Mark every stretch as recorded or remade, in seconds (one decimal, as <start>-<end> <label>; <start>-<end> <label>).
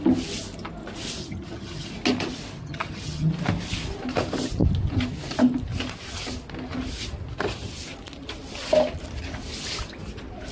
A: 0.0-1.2 recorded; 1.2-1.9 remade; 1.9-2.6 recorded; 2.6-3.3 remade; 3.3-10.5 recorded